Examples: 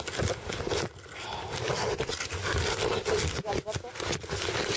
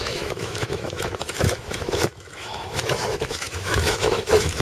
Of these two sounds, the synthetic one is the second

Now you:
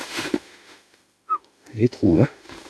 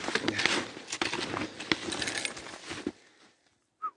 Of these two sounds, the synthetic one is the first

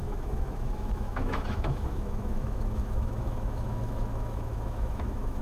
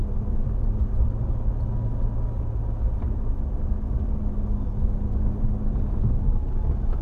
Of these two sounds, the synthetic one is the first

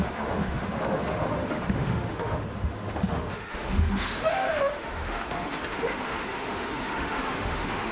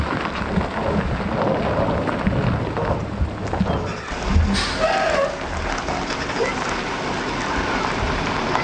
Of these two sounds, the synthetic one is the first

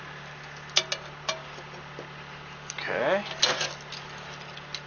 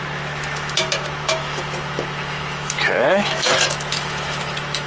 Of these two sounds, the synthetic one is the second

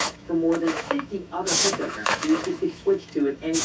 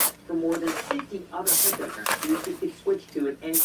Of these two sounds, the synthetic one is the first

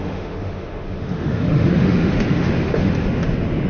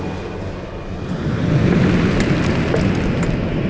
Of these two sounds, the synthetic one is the first